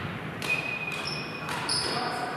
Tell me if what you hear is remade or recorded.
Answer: remade